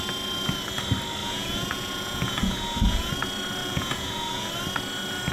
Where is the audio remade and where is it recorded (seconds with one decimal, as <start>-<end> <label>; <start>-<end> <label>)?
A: 0.0-1.2 recorded; 1.2-3.1 remade; 3.1-3.6 recorded; 3.6-4.5 remade; 4.5-5.3 recorded